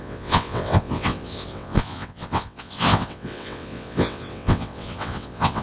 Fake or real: fake